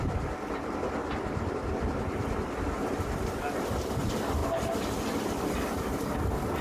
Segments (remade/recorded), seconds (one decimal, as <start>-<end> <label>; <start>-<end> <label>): 0.0-6.6 recorded